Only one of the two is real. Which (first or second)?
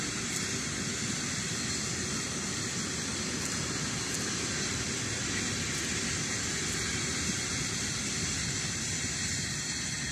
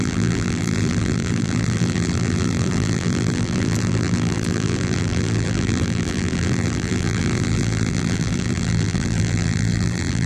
first